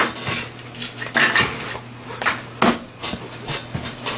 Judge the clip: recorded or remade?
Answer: recorded